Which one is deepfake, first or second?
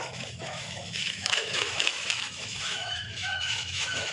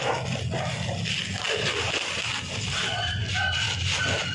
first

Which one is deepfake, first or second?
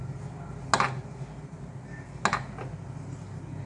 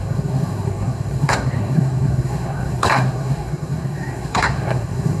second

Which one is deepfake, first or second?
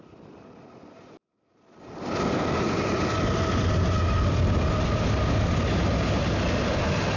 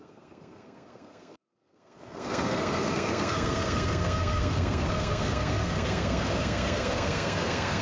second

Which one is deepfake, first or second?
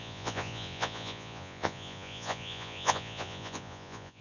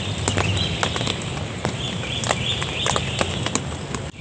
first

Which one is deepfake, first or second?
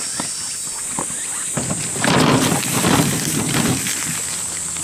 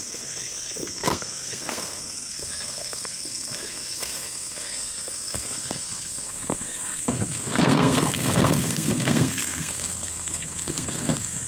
second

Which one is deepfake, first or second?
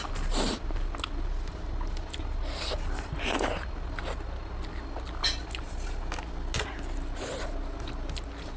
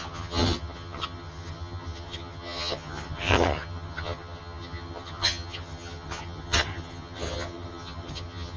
second